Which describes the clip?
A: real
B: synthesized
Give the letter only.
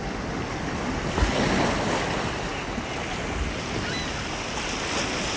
A